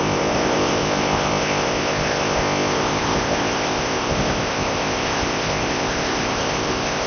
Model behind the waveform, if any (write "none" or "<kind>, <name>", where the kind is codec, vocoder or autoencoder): codec, ZipCodec